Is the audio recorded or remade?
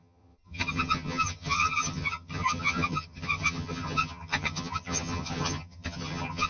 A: remade